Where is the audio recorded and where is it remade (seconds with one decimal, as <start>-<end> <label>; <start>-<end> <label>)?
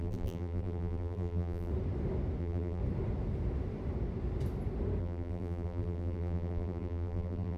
0.0-1.7 remade; 1.7-2.4 recorded; 2.4-2.8 remade; 2.8-5.0 recorded; 5.0-7.6 remade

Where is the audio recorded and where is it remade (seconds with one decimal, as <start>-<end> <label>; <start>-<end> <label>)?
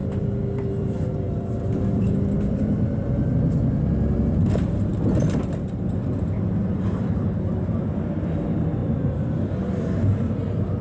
0.0-8.8 remade; 8.8-9.6 recorded; 9.6-10.8 remade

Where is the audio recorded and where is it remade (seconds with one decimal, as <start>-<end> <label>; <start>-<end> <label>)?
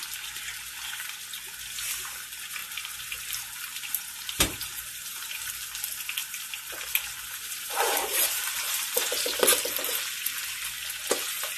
0.0-2.6 recorded; 2.6-5.5 remade; 5.5-6.2 recorded; 6.2-6.7 remade; 6.7-7.4 recorded; 7.4-10.1 remade; 10.1-11.6 recorded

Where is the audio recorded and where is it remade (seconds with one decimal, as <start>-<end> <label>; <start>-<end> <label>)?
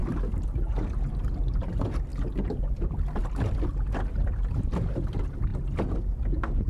0.0-6.7 recorded